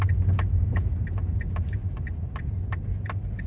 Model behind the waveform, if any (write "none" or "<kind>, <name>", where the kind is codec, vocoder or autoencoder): vocoder, BigVGAN v2